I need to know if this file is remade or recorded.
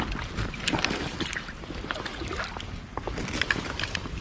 recorded